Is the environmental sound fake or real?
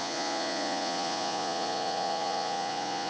fake